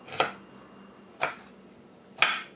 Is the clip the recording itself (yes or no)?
yes